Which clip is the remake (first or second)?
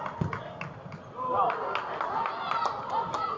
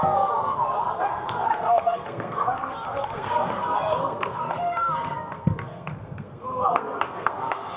second